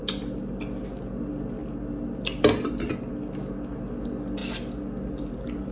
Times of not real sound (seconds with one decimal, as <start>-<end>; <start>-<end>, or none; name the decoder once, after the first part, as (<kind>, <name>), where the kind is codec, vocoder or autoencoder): none